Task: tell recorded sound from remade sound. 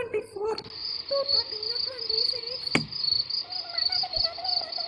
recorded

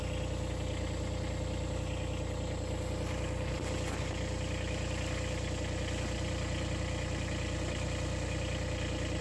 recorded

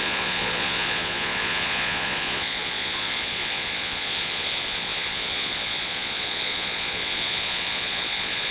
remade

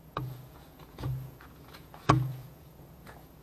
remade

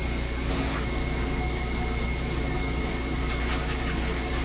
remade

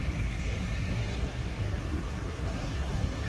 remade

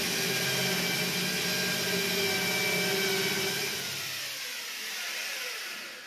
recorded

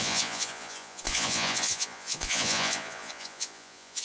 remade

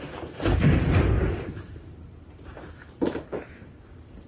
remade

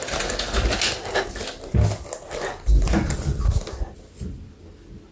recorded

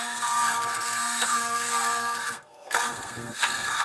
remade